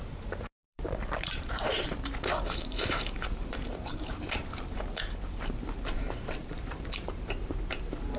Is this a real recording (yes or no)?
no